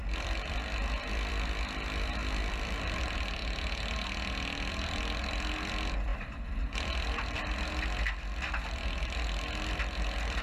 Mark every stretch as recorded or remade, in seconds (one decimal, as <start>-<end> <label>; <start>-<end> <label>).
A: 0.0-1.3 remade; 1.3-6.1 recorded; 6.1-7.5 remade; 7.5-10.4 recorded